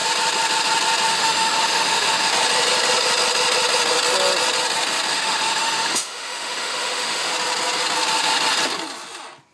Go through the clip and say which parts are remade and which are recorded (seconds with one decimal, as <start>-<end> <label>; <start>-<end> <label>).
0.0-1.1 recorded; 1.1-2.3 remade; 2.3-5.1 recorded; 5.1-7.3 remade; 7.3-9.5 recorded